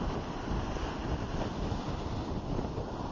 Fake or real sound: real